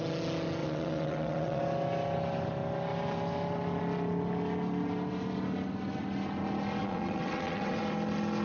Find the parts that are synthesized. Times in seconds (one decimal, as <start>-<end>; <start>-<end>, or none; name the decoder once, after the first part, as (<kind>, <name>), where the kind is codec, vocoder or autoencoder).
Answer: 0.6-1.6 (vocoder, WaveNeXt); 6.8-7.8